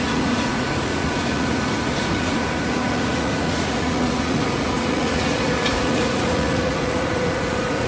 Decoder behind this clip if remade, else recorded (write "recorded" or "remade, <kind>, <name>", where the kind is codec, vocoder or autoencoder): remade, vocoder, Vocos